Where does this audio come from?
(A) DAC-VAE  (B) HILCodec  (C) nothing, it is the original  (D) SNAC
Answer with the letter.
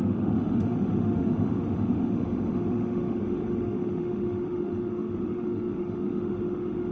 A